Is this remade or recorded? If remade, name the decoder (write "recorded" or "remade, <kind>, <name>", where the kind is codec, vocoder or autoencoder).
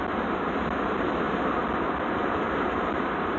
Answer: recorded